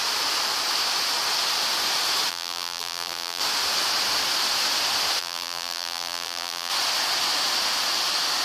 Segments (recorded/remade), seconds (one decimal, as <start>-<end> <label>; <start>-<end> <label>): 0.0-2.3 recorded; 2.3-3.4 remade; 3.4-5.2 recorded; 5.2-6.7 remade; 6.7-8.4 recorded